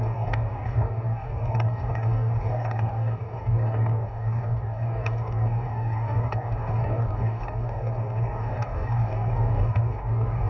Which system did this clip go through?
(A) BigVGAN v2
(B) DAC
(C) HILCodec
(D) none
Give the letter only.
B